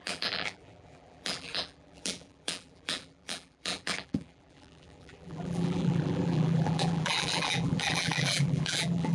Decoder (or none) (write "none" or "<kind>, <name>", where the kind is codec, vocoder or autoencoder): vocoder, BigVGAN v2